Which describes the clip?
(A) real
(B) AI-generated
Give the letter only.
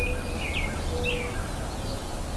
A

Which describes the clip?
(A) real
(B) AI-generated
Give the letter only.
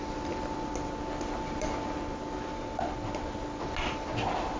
A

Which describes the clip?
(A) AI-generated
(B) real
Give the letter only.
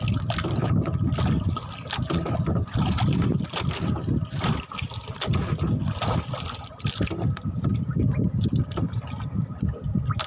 B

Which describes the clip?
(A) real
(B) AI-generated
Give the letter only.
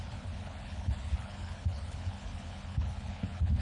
B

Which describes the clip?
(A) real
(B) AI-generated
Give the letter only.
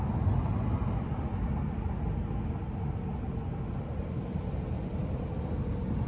A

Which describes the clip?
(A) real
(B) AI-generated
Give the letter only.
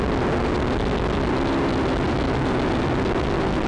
A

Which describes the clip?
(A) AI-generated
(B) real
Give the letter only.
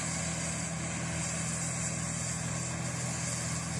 B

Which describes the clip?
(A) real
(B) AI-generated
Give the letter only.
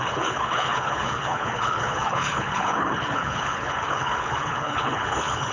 B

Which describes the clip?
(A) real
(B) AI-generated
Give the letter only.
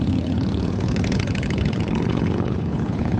B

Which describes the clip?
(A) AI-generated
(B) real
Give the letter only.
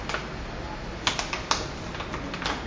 B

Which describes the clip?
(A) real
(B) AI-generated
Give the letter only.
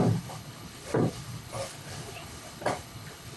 B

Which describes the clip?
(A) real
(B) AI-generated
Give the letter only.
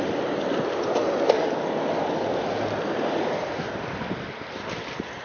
A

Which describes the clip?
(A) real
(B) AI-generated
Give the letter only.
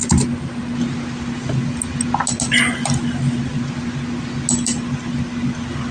A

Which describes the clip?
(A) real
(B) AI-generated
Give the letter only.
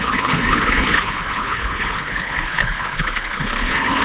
B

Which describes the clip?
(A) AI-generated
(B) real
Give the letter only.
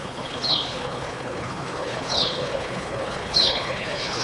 A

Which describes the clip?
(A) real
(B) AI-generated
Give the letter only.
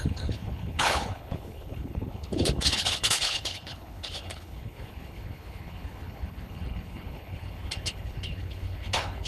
B